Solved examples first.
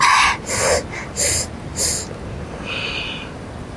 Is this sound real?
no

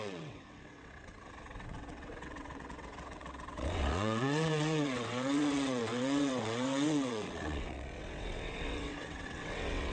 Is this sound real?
no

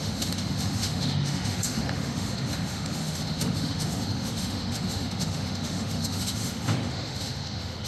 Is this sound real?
no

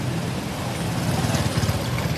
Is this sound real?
yes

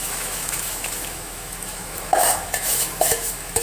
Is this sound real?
no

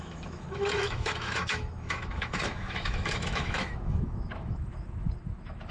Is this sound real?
no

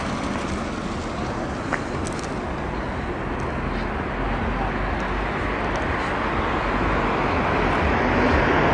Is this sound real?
yes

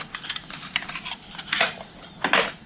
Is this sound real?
no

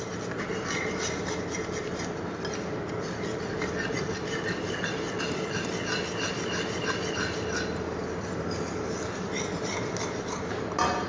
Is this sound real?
yes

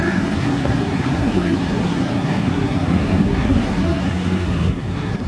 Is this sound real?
no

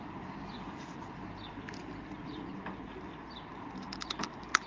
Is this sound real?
yes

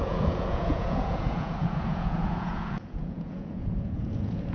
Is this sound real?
no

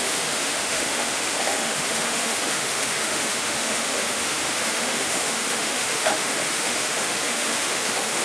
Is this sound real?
no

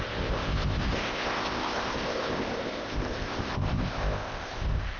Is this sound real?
no